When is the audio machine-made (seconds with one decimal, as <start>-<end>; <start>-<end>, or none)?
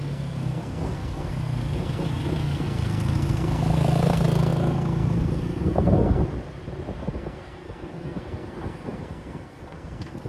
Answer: 0.0-6.2; 7.0-10.3